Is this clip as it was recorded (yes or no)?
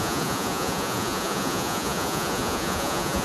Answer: no